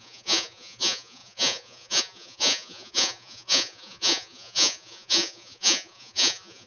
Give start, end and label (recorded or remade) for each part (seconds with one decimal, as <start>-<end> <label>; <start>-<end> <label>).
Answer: 0.0-6.7 remade